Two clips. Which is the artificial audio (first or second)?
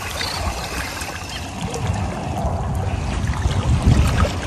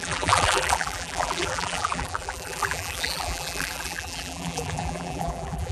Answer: second